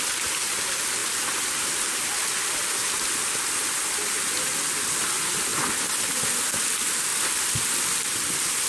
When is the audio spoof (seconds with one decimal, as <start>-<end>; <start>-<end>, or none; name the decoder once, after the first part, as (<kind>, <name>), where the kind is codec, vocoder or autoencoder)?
1.0-4.1 (vocoder, BigVGAN v2); 7.1-8.7